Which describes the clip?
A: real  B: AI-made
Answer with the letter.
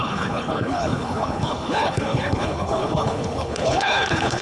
B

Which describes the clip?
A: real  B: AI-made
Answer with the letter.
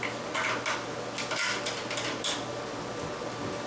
A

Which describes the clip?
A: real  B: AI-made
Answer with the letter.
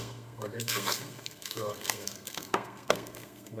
B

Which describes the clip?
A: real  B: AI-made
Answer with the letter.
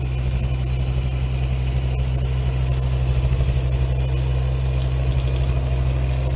A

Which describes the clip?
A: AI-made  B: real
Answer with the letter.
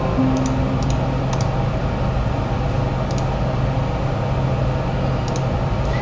B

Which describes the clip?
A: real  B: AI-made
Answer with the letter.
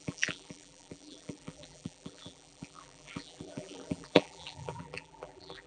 B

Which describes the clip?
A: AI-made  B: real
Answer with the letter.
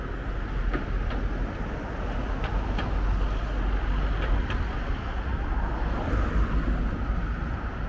B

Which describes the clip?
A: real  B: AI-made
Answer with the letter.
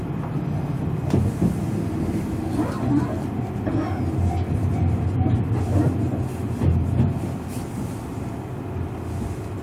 A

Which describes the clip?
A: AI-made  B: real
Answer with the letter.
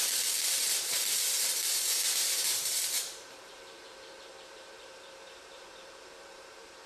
A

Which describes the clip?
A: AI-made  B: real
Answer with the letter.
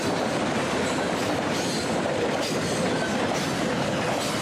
B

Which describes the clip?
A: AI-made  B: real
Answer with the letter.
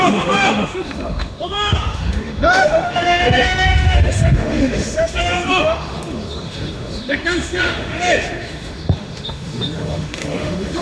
A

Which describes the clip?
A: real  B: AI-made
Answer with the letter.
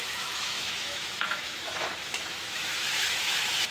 B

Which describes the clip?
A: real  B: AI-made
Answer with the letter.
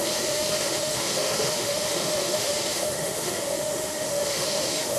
B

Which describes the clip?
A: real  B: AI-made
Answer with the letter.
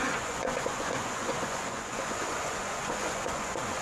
B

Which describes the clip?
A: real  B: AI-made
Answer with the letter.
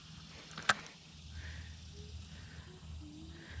A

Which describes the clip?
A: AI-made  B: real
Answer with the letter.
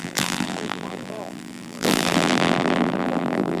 A